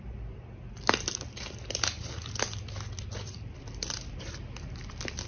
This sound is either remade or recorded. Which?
remade